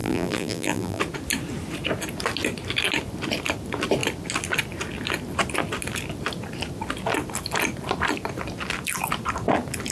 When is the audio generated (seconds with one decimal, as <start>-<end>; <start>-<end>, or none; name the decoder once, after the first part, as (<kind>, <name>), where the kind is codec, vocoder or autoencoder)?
0.0-1.0 (vocoder, BigVGAN v2)